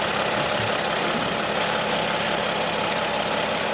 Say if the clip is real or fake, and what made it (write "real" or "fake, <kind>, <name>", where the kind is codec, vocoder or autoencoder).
real